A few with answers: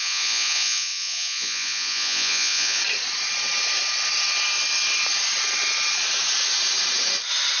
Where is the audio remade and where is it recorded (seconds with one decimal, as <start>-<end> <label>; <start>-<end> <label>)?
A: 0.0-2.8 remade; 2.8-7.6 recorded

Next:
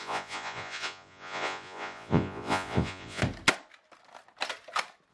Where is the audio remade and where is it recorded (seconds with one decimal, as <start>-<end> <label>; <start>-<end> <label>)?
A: 0.0-3.2 remade; 3.2-5.1 recorded

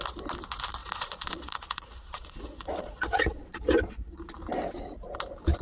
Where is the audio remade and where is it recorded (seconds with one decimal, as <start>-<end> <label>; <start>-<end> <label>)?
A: 0.0-0.8 recorded; 0.8-4.2 remade; 4.2-5.6 recorded